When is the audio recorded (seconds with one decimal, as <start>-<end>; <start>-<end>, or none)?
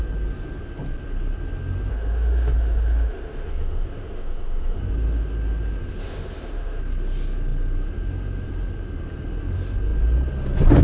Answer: 0.0-1.9; 4.8-6.0; 6.8-10.8